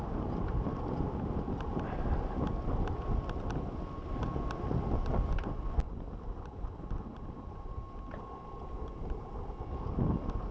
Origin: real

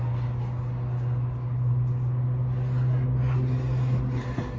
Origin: real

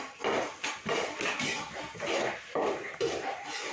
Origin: real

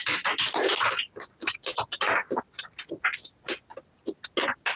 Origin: real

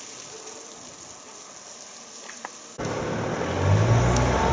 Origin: real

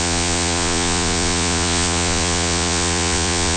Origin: fake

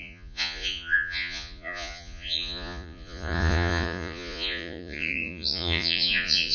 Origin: fake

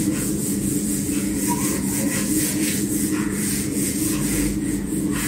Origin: fake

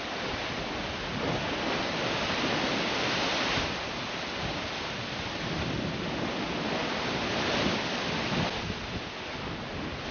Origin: real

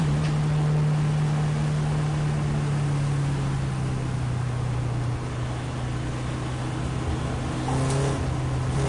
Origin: real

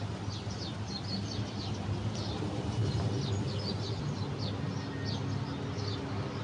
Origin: real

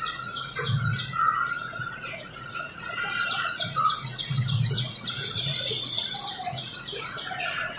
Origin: fake